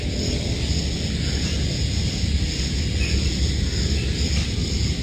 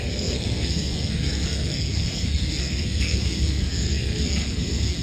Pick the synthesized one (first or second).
second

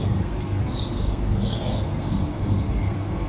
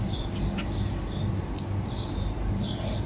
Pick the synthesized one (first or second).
first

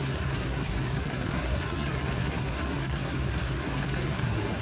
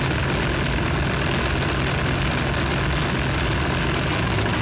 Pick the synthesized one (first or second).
first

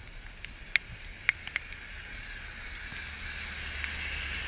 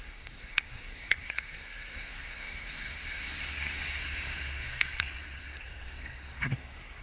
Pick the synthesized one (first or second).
second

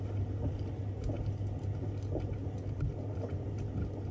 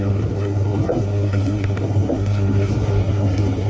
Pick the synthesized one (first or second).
second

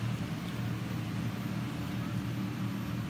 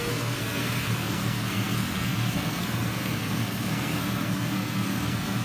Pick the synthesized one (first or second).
second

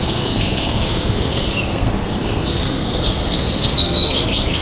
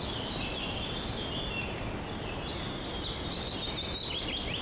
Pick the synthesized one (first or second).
first